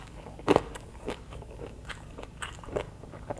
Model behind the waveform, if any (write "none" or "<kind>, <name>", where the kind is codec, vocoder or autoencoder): codec, DAC